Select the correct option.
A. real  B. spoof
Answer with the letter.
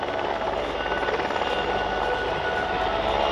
A